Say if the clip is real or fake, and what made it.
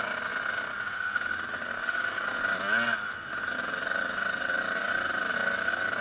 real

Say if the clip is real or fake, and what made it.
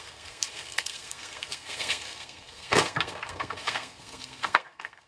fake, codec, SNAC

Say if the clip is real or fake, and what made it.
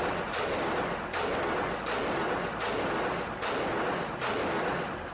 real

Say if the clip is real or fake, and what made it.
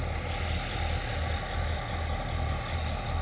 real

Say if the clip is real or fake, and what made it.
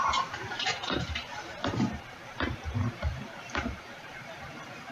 fake, vocoder, BigVGAN v2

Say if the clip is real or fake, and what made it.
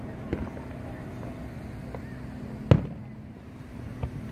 real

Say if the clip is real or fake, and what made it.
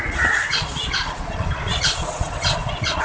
fake, vocoder, Vocos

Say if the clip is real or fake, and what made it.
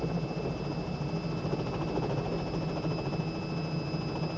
real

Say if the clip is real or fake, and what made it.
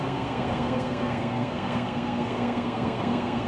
fake, codec, SNAC